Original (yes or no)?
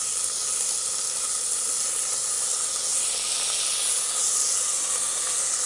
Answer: yes